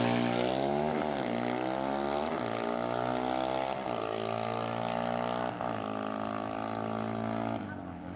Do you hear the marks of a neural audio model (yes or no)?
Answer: no